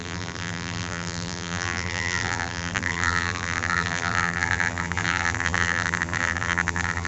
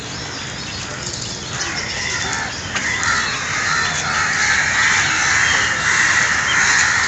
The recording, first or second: second